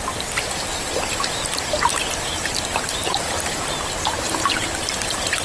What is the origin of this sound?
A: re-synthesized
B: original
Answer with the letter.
B